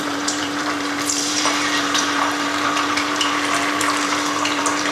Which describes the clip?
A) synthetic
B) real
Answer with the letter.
A